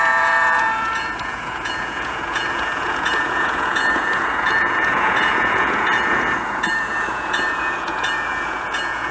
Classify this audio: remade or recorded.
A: remade